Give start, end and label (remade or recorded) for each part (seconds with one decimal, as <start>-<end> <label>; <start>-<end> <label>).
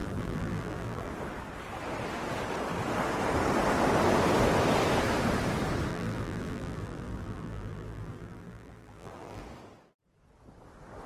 0.0-1.1 remade; 1.1-5.9 recorded; 5.9-9.4 remade; 9.4-11.1 recorded